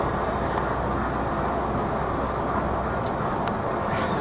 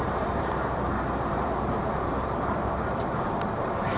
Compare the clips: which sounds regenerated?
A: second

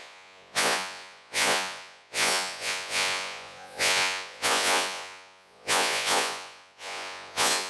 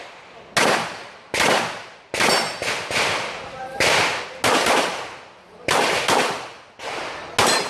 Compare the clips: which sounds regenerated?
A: first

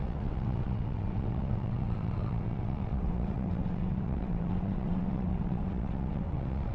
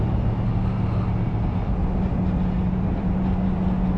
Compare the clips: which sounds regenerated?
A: first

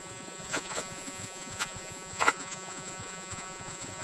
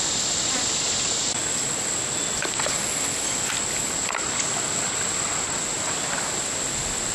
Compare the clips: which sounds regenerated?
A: first